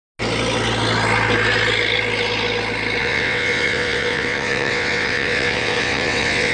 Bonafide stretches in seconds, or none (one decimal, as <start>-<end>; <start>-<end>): 0.0-3.0